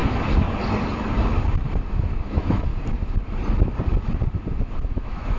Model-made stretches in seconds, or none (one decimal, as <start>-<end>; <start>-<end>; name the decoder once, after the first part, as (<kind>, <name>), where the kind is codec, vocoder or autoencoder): 2.0-2.7 (autoencoder, DAC-VAE); 4.9-5.4